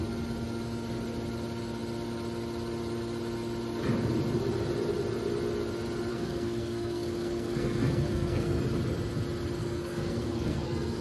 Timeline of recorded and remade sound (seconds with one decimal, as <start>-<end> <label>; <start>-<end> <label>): 0.0-6.1 recorded; 6.1-8.6 remade; 8.6-9.6 recorded; 9.6-11.0 remade